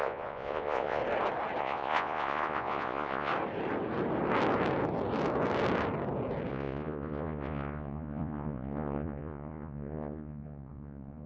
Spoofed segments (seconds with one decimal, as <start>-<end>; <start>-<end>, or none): 0.0-1.0; 1.6-3.3; 6.5-11.3

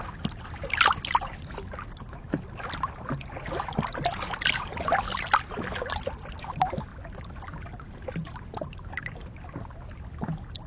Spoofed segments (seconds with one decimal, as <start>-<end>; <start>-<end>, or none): none

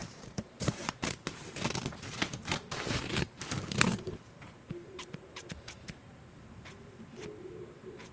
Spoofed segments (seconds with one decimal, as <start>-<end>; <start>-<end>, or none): 0.0-1.6; 2.3-6.4

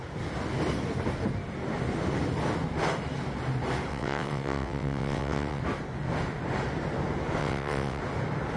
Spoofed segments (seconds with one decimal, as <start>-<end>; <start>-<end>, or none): 3.9-5.6; 7.4-8.0

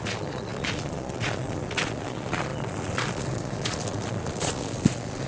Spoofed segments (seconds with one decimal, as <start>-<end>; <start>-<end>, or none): 0.0-5.3

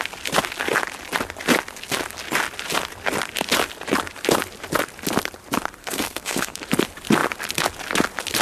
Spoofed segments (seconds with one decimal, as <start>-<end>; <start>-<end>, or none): 5.8-6.6

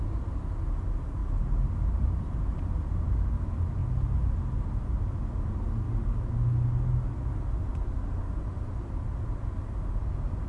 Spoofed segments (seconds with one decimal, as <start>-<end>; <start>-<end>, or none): 1.2-3.0; 7.7-8.2

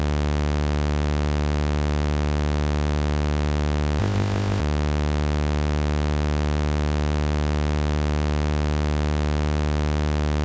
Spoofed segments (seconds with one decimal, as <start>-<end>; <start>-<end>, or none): 4.0-4.6